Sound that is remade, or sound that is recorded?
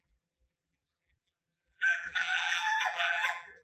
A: remade